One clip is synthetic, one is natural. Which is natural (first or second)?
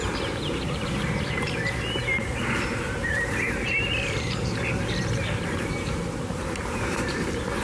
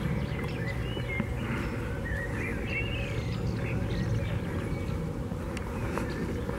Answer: second